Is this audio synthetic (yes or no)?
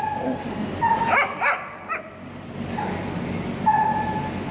no